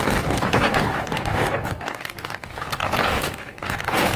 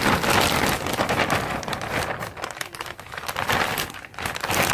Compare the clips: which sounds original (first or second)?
second